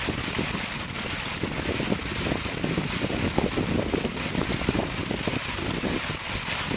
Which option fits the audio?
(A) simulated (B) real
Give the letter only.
B